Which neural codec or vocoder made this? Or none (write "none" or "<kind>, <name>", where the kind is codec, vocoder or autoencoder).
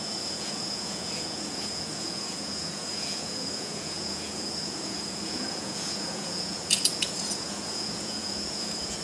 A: vocoder, Vocos